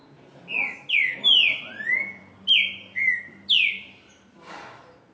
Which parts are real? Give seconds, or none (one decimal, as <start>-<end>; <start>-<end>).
0.0-5.1